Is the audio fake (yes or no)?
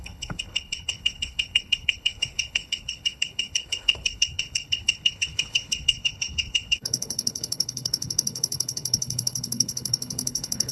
yes